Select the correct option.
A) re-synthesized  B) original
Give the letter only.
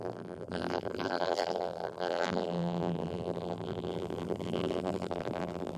A